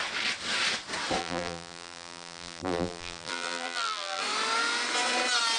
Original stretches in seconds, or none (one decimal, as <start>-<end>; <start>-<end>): 0.0-1.2; 4.2-5.6